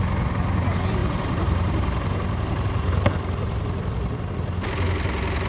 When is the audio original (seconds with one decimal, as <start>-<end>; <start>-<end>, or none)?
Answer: 0.0-1.0; 4.3-5.5